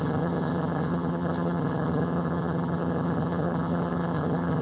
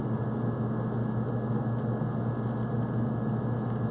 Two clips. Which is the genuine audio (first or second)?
second